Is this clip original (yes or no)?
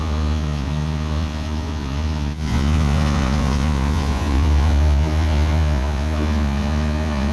no